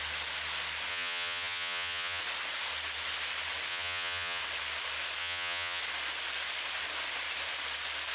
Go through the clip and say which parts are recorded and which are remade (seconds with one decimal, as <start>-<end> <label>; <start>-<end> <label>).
0.0-0.9 recorded; 0.9-2.2 remade; 2.2-3.7 recorded; 3.7-4.4 remade; 4.4-5.2 recorded; 5.2-5.8 remade; 5.8-8.1 recorded